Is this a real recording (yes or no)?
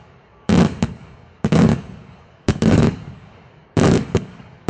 no